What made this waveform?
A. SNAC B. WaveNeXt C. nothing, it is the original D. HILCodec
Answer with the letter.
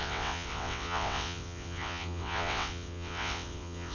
B